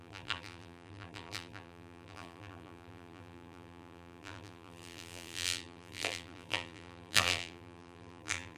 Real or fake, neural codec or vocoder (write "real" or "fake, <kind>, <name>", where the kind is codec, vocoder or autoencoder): fake, vocoder, BigVGAN v2